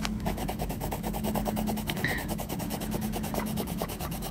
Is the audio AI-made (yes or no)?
yes